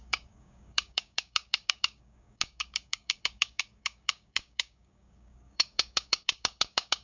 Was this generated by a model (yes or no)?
yes